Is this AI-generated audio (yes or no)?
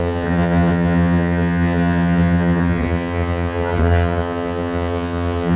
yes